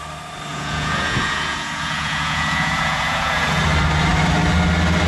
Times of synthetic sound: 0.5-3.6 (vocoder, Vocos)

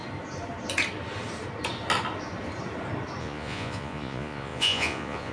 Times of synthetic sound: 3.2-5.3 (vocoder, Vocos)

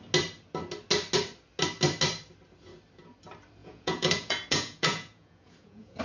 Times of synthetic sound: 3.6-6.0 (vocoder, Vocos)

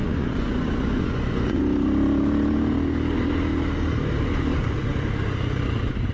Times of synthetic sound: 0.0-1.6 (vocoder, Vocos)

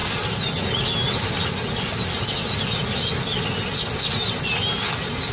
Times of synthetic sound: none

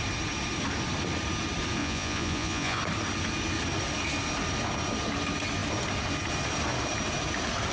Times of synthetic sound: 1.8-2.8 (vocoder, Vocos)

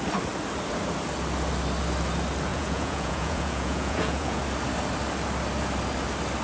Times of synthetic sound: 2.5-4.4 (vocoder, Vocos)

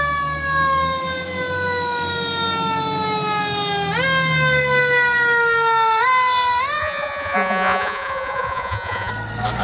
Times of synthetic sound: 6.8-9.1 (vocoder, Vocos)